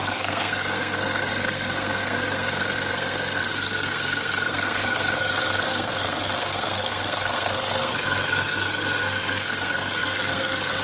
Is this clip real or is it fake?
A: fake